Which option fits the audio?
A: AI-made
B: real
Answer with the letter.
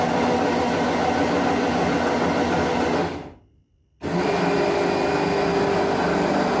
B